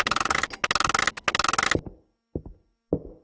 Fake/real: real